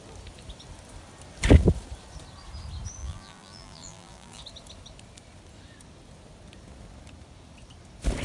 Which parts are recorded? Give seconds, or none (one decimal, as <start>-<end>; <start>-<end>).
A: 0.0-3.0; 4.4-8.2

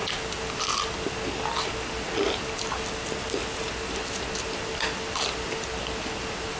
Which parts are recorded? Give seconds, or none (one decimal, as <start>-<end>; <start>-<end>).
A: 0.0-6.6